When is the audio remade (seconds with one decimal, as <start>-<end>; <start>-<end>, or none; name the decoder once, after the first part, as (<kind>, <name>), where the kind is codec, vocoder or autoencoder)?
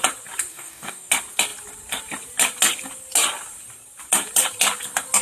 0.5-1.1 (codec, DAC)